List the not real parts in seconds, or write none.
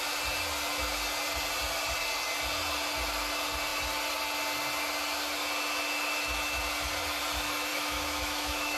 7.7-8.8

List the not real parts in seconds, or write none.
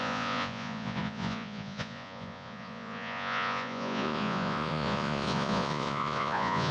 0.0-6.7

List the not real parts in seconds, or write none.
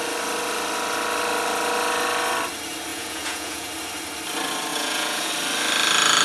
2.9-3.7; 4.7-5.3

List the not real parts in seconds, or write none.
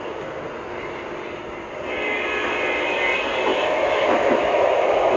3.5-5.2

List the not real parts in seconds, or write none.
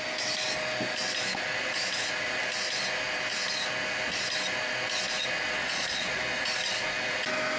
5.6-6.2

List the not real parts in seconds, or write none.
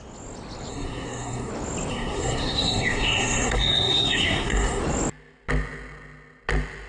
0.7-1.5; 1.9-4.8